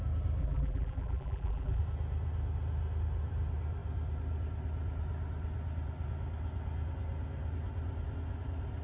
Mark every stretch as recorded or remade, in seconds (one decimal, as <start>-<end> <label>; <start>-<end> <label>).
0.0-0.4 recorded; 0.4-1.8 remade; 1.8-8.8 recorded